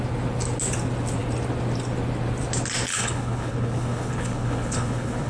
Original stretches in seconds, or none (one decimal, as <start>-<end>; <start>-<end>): 0.0-2.9